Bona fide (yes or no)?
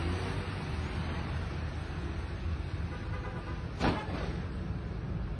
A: yes